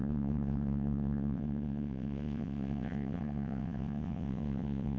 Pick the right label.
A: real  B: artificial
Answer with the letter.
B